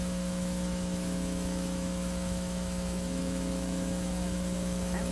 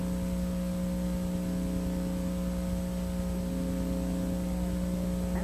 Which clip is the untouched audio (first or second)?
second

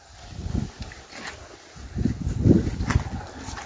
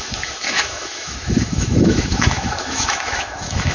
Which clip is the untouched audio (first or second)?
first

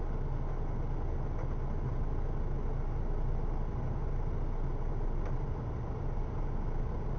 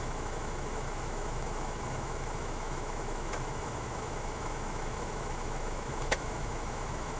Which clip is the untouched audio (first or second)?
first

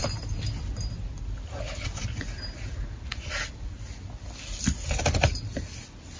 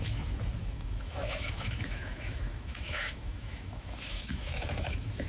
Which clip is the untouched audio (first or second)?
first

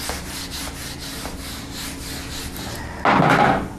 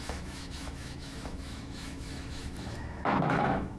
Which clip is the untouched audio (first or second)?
first